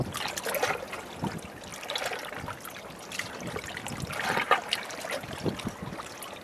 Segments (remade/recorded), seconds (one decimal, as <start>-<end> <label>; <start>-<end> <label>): 0.0-6.4 recorded